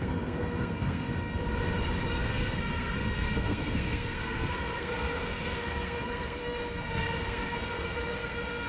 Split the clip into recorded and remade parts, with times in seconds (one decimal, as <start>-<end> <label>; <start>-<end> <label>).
0.0-1.4 remade; 1.4-2.1 recorded; 2.1-8.7 remade